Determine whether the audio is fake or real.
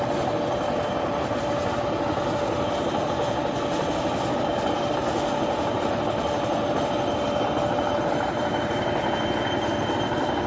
real